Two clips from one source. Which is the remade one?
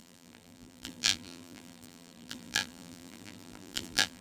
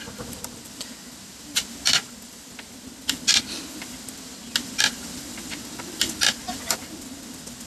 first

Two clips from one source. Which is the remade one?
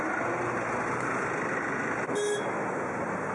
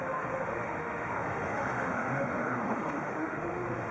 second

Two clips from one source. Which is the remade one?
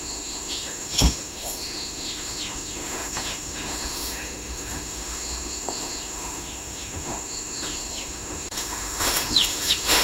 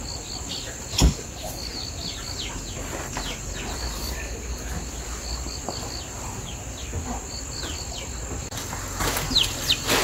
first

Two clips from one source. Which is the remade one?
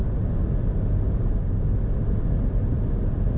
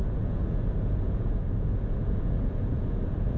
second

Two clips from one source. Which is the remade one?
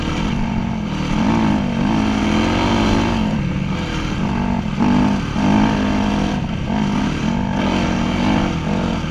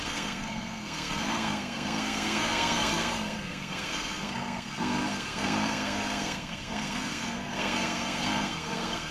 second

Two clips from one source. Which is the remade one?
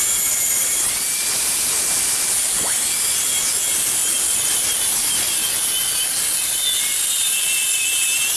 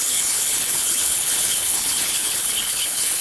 second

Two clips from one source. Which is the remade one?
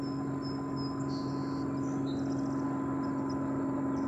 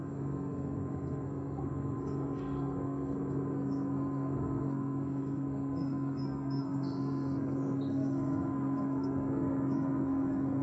second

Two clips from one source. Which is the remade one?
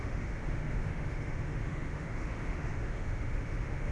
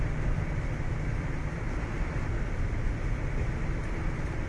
first